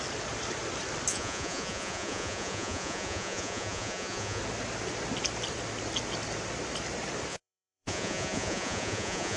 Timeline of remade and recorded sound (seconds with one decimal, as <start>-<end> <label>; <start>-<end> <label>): 0.0-1.1 recorded; 1.1-4.4 remade; 4.4-7.3 recorded; 7.3-9.4 remade